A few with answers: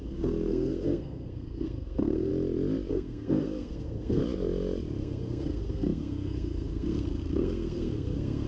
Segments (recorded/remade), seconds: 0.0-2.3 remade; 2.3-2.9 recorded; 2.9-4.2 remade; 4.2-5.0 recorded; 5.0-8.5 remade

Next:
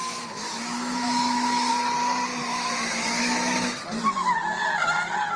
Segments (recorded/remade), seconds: 0.0-1.7 remade; 1.7-2.3 recorded; 2.3-3.8 remade; 3.8-5.4 recorded

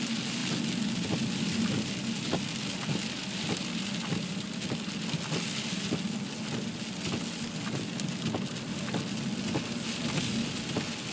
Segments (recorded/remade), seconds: 0.0-11.1 recorded